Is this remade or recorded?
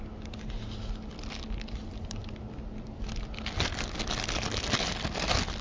recorded